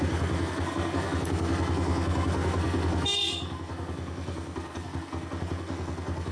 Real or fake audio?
fake